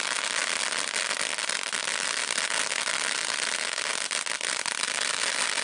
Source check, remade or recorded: recorded